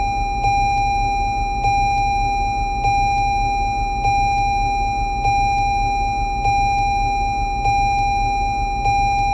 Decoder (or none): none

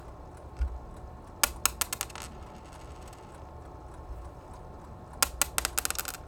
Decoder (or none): none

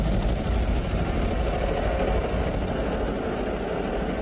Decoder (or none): none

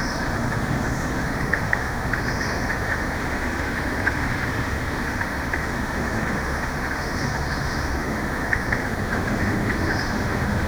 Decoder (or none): autoencoder, DAC-VAE